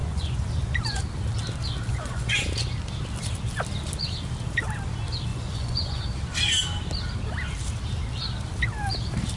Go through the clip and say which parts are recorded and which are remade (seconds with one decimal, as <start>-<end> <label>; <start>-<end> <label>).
0.0-1.0 remade; 1.0-1.9 recorded; 1.9-2.5 remade; 2.5-5.3 recorded; 5.3-6.0 remade; 6.0-9.4 recorded